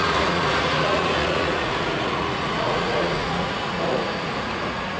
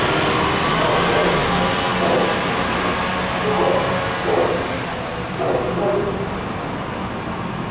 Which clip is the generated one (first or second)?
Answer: first